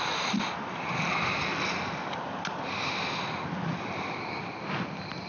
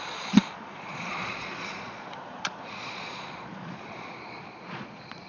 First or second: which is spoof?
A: second